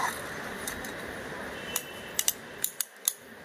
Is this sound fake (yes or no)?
no